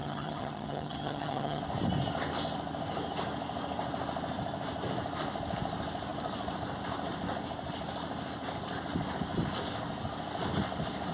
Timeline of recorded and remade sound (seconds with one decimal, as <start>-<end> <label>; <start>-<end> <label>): 0.0-1.6 remade; 1.6-11.1 recorded